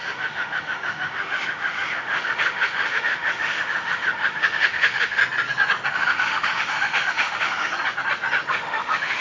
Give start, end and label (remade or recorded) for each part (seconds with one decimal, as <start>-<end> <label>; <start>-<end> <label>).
0.0-5.2 remade; 5.2-5.9 recorded; 5.9-7.7 remade; 7.7-8.5 recorded; 8.5-9.2 remade